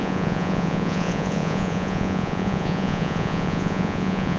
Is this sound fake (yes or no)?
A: yes